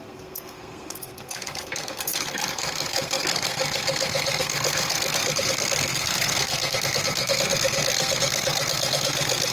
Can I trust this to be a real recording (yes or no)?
no